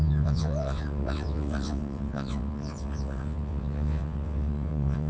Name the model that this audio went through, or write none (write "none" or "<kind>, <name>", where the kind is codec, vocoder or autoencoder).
vocoder, WaveNeXt